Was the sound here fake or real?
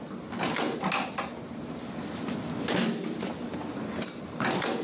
real